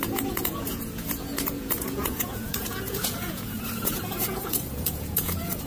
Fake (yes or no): yes